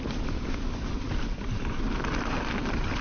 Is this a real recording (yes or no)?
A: yes